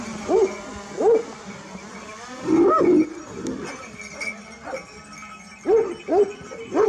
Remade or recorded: recorded